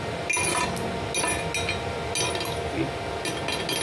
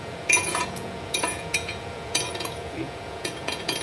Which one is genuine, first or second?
first